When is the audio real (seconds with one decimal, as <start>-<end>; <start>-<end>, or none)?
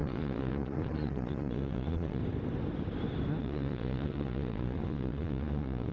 2.2-3.4